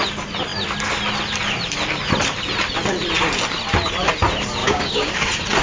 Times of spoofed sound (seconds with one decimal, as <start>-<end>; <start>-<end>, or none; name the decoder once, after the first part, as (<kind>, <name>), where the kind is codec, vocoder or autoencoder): 4.6-5.1 (codec, DAC)